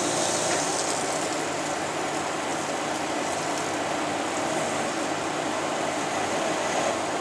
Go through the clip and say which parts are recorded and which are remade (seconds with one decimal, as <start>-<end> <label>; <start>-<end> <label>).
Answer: 0.0-7.2 recorded